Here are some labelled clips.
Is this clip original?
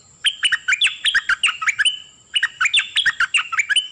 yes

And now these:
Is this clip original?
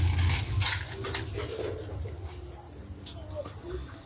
yes